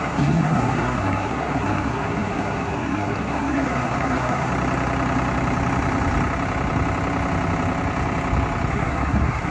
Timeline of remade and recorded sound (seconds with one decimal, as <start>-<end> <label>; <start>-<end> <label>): 0.0-4.5 remade; 4.5-8.7 recorded; 8.7-9.5 remade